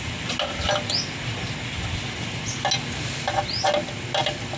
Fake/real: real